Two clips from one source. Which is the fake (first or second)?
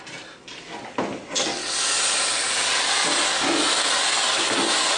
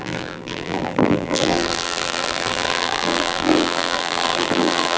second